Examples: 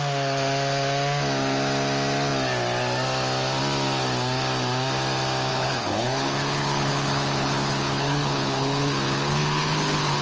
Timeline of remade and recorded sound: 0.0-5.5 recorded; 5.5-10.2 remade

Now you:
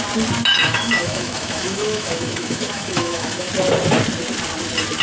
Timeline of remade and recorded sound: 0.0-0.5 recorded; 0.5-3.5 remade; 3.5-5.0 recorded

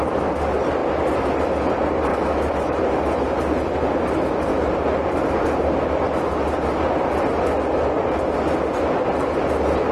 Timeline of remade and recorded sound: 0.0-2.1 recorded; 2.1-2.8 remade; 2.8-9.9 recorded

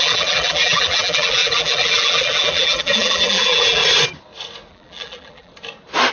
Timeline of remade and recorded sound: 0.0-3.8 remade; 3.8-4.7 recorded; 4.7-5.5 remade; 5.5-6.1 recorded

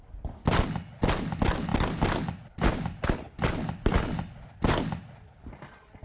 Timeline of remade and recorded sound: 0.0-6.0 recorded

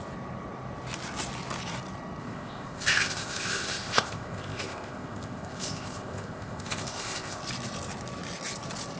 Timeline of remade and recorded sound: 0.0-2.2 recorded; 2.2-7.4 remade; 7.4-9.0 recorded

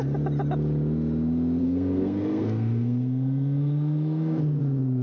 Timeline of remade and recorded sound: 0.0-1.6 recorded; 1.6-4.6 remade; 4.6-5.0 recorded

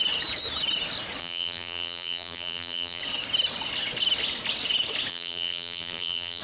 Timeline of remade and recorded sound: 0.0-1.2 recorded; 1.2-3.0 remade; 3.0-5.1 recorded; 5.1-6.4 remade